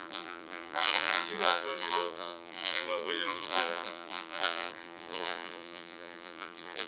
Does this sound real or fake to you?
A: fake